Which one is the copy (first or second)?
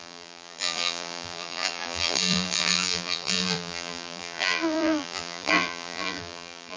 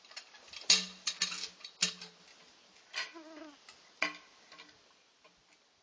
first